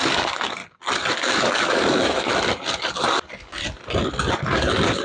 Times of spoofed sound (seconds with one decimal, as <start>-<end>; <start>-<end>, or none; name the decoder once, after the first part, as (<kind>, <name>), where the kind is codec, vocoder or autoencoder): 0.0-0.6 (codec, DAC); 1.2-2.3; 2.8-3.6; 4.3-5.0